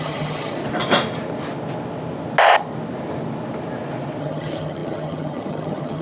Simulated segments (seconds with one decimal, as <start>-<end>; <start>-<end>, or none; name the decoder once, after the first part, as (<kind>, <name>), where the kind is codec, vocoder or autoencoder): 0.0-0.6 (vocoder, HiFi-GAN); 4.2-6.0